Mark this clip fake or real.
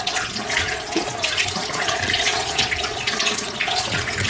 fake